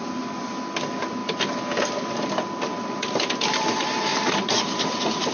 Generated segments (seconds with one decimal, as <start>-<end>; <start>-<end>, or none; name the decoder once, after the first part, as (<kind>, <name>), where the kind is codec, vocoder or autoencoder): none